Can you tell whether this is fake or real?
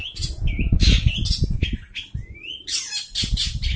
real